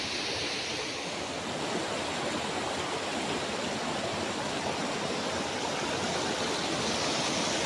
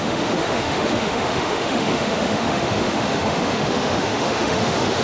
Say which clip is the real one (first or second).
first